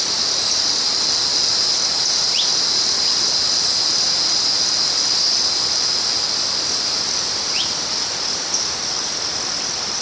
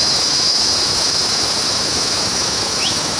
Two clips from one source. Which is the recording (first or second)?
first